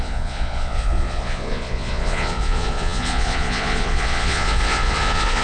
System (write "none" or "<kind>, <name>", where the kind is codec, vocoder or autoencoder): vocoder, Vocos